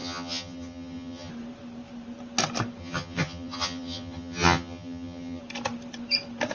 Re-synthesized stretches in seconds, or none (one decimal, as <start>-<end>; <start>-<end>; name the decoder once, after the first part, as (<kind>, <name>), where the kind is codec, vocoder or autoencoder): 0.0-1.3 (vocoder, HiFi-GAN); 2.8-5.4